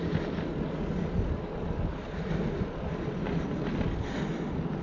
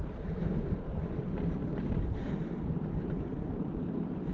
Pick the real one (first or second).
first